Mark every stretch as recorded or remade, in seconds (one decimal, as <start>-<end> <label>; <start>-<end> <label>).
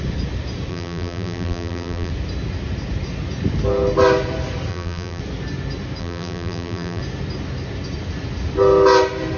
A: 0.0-0.7 recorded; 0.7-2.1 remade; 2.1-4.7 recorded; 4.7-5.2 remade; 5.2-6.0 recorded; 6.0-7.0 remade; 7.0-9.4 recorded